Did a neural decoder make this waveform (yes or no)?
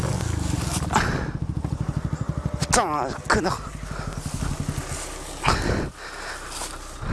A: no